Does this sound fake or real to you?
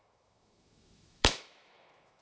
fake